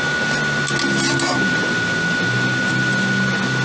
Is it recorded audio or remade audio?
recorded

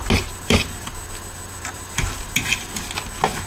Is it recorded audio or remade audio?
recorded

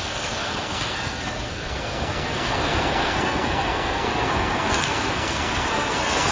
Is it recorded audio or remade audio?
remade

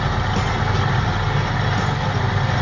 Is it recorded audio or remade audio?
recorded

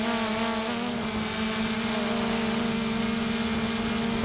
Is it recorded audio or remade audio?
recorded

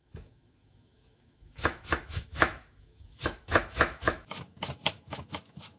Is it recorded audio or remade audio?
remade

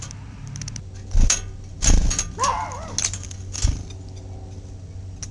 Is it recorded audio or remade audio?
recorded